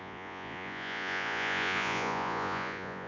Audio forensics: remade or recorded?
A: remade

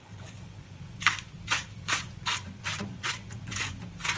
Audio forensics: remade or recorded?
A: remade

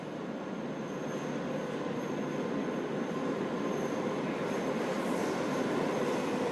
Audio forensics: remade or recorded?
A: recorded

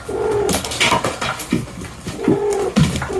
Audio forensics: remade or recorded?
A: recorded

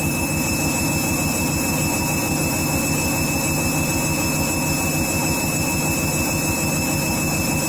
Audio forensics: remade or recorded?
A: recorded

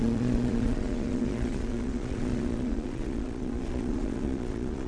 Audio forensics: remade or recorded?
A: remade